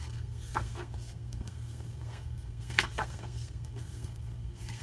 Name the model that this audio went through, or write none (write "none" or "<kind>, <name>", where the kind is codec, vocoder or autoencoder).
codec, SNAC